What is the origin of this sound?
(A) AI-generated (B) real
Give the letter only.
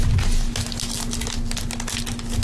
B